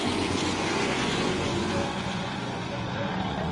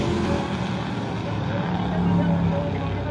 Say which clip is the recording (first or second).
second